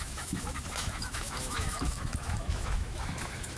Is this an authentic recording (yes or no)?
no